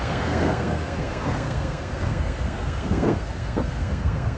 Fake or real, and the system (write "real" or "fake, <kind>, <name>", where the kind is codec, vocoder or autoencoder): fake, codec, SNAC